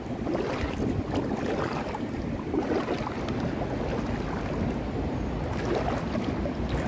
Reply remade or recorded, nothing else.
recorded